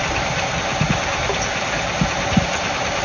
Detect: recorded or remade recorded